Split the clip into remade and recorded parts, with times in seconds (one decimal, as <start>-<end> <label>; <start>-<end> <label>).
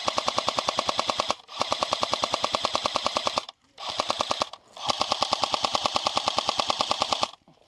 0.0-3.9 remade; 3.9-7.7 recorded